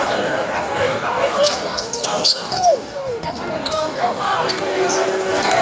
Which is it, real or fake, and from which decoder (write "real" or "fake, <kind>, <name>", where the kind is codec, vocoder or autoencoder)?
fake, codec, DAC